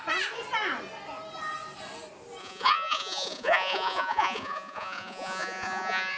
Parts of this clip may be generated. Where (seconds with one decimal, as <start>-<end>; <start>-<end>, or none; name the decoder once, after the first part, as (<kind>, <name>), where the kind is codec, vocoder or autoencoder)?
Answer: 2.4-6.2 (vocoder, Vocos)